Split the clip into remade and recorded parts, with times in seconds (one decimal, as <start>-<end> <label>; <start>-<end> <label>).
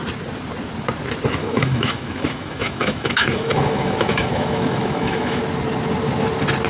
0.0-1.4 recorded; 1.4-5.4 remade; 5.4-6.7 recorded